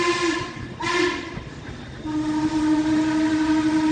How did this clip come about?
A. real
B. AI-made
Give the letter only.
A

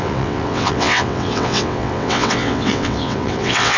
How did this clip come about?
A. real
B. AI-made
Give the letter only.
B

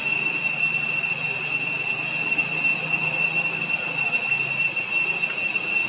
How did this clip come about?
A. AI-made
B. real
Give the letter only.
B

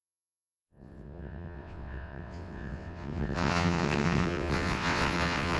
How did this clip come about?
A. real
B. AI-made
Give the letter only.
B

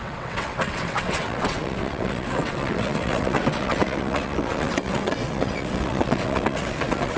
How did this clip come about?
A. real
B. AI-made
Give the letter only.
B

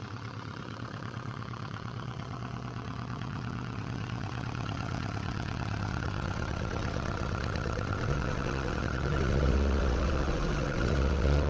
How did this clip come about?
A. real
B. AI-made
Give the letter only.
B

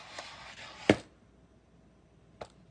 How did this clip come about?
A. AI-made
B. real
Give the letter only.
B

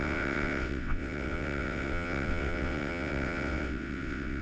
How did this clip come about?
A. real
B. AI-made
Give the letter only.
B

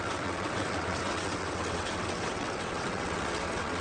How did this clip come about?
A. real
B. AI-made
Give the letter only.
B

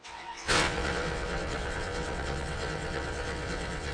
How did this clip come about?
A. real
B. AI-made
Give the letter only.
B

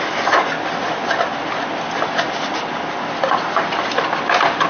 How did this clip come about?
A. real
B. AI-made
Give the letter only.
A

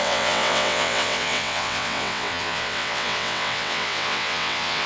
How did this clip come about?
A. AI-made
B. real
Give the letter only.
A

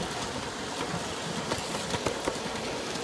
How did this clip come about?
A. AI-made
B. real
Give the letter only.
B